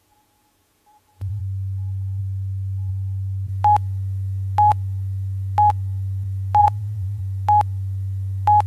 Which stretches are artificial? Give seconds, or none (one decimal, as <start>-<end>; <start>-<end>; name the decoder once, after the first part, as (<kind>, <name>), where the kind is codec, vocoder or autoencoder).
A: 0.0-1.4 (vocoder, Vocos); 6.6-7.2